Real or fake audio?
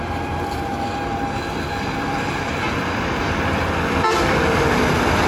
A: fake